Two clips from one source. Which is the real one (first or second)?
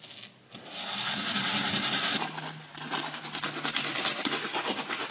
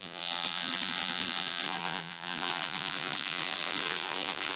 first